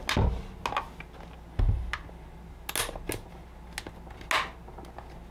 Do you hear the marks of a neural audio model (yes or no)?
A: no